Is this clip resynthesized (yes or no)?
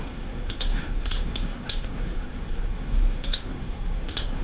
yes